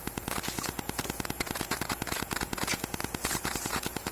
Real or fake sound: fake